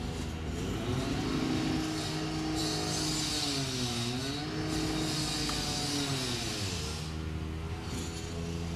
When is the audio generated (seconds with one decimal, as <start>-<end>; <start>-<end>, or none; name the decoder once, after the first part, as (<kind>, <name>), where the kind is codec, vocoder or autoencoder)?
none